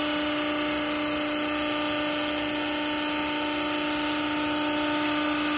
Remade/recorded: recorded